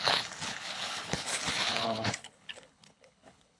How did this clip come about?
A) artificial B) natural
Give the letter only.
A